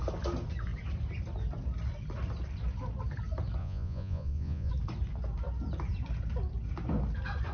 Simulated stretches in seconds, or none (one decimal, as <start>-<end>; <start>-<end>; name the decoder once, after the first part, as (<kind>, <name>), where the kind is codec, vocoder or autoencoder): 3.6-4.7 (vocoder, Vocos)